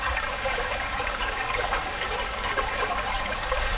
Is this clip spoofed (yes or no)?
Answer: yes